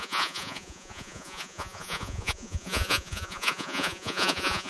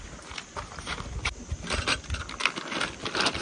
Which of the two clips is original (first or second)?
second